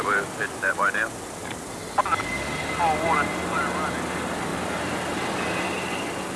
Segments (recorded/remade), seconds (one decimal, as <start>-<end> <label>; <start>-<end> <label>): 0.0-6.4 recorded